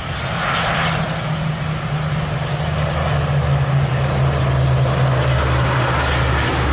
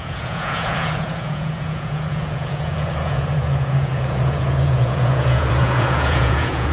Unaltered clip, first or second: first